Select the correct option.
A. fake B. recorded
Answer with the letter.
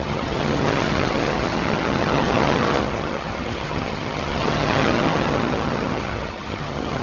A